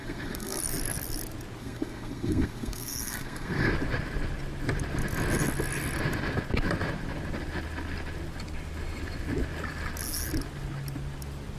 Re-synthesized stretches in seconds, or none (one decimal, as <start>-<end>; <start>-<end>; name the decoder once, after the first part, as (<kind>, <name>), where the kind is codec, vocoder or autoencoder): 0.0-0.6 (codec, SNAC); 1.6-3.7

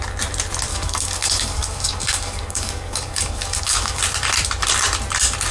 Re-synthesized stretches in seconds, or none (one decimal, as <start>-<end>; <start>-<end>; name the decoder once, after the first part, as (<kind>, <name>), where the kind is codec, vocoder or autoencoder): 0.7-4.0 (codec, DAC)

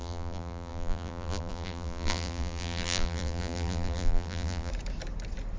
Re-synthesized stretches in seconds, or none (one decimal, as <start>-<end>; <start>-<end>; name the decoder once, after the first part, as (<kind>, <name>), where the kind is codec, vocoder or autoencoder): 0.0-4.7 (vocoder, BigVGAN v2)

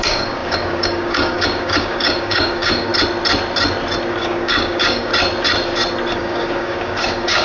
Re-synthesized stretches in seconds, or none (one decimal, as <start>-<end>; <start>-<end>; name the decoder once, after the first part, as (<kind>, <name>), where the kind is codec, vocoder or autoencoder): 0.0-2.9 (codec, DAC); 4.1-5.1; 6.1-7.4

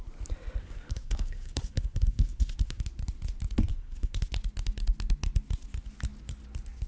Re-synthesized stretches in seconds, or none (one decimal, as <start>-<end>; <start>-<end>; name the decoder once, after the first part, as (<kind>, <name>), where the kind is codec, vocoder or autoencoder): 0.6-2.8 (codec, SNAC); 3.7-4.2

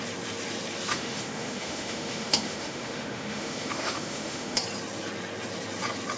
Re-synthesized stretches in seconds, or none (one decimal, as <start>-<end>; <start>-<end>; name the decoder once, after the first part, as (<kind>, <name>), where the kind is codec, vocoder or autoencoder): 0.9-4.6 (autoencoder, DAC-VAE)